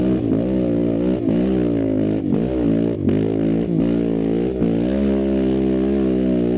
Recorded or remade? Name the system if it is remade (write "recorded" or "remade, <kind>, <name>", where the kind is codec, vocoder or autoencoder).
recorded